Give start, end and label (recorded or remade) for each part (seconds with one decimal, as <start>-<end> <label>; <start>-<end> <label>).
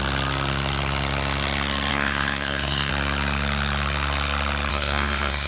0.0-1.9 recorded; 1.9-2.9 remade; 2.9-4.7 recorded; 4.7-5.5 remade